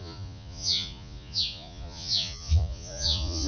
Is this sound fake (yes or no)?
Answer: yes